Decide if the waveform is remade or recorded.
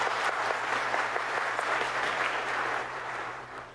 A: remade